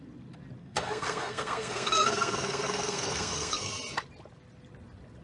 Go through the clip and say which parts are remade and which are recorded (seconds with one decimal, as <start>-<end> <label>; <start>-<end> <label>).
0.0-0.6 recorded; 0.6-3.7 remade; 3.7-5.2 recorded